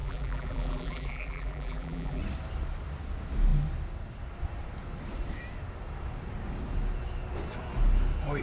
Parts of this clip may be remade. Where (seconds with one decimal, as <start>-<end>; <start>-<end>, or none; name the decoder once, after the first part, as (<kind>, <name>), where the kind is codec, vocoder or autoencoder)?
0.0-2.2 (vocoder, BigVGAN v2)

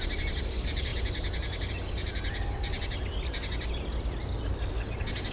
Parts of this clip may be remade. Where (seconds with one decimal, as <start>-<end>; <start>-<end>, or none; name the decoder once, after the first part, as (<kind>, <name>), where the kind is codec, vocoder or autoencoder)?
none

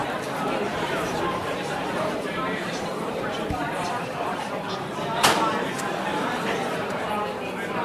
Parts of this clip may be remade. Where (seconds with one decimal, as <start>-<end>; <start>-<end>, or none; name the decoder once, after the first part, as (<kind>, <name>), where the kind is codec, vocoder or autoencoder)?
0.7-4.5 (vocoder, BigVGAN v2); 6.1-7.1

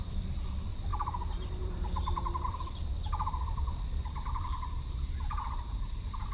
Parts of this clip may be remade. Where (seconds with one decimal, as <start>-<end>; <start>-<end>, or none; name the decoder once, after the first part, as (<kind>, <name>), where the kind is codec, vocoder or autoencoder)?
0.0-6.3 (vocoder, BigVGAN v2)

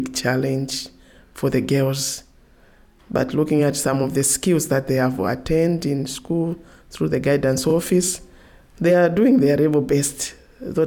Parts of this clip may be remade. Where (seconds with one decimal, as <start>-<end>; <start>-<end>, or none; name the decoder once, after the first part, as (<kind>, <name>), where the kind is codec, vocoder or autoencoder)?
3.6-6.2 (vocoder, BigVGAN v2); 7.7-8.9

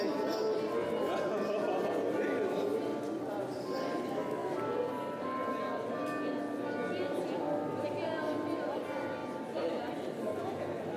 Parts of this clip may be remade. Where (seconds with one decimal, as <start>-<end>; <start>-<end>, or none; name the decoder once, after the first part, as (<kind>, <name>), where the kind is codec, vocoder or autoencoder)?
9.2-10.4 (vocoder, BigVGAN v2)